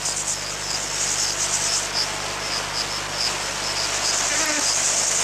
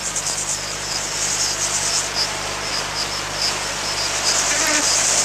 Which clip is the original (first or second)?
first